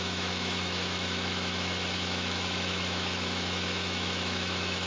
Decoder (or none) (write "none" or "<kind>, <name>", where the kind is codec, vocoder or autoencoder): autoencoder, DAC-VAE